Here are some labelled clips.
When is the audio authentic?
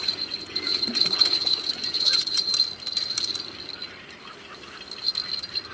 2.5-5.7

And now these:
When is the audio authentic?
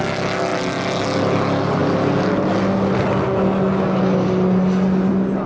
0.0-5.5